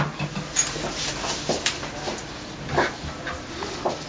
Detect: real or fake real